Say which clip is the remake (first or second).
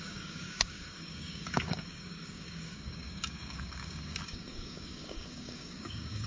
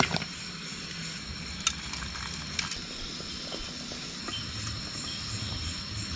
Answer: first